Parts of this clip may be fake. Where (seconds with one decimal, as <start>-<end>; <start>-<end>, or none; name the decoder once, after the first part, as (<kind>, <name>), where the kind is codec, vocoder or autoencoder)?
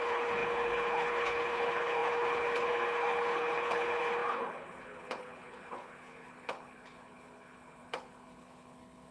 0.0-9.1 (codec, HILCodec)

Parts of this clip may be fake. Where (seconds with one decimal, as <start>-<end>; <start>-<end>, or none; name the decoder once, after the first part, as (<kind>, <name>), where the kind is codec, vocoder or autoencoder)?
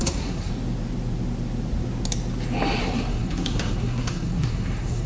0.0-0.5 (codec, SNAC); 2.8-5.1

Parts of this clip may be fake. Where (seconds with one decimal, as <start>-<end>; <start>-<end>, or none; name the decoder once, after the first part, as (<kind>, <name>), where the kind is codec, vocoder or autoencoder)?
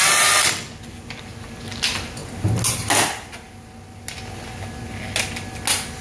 none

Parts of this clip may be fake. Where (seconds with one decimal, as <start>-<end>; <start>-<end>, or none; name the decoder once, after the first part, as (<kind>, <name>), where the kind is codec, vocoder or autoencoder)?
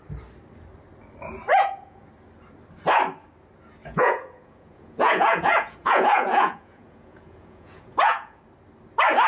1.5-2.1 (vocoder, Vocos); 3.8-8.4